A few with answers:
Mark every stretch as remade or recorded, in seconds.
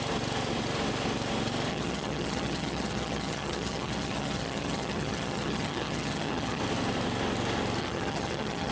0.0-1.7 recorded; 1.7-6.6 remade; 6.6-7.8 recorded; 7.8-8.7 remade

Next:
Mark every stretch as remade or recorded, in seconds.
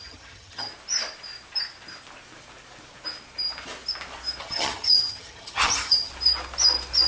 0.0-0.7 remade; 0.7-4.4 recorded; 4.4-6.1 remade; 6.1-7.1 recorded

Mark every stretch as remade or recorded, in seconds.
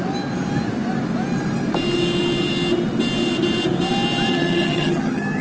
0.0-4.3 recorded; 4.3-5.4 remade